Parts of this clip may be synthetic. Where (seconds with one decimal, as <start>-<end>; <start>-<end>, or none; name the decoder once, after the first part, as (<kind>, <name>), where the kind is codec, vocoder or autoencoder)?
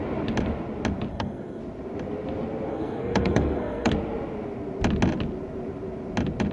1.1-1.6 (codec, SNAC); 2.7-3.9